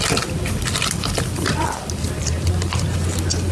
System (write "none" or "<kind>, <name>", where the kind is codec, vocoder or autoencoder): none